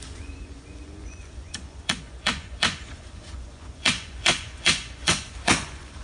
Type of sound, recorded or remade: remade